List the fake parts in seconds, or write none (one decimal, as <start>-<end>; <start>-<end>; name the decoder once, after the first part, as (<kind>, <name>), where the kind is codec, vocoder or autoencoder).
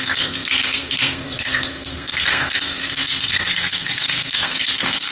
0.0-5.1 (codec, SNAC)